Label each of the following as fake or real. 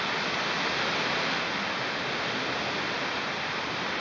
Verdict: real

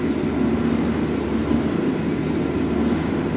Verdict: real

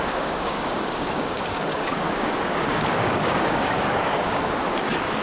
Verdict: fake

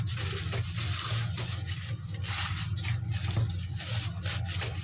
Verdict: real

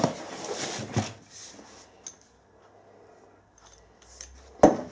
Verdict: real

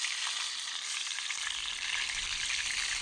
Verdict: real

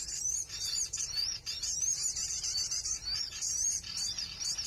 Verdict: fake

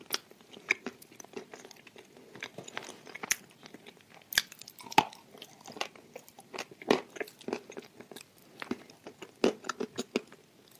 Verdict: real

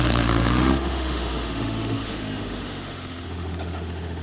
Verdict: fake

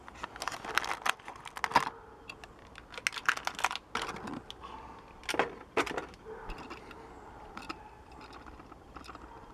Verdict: real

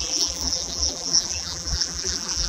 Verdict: fake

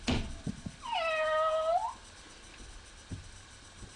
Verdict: real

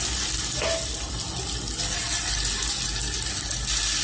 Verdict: real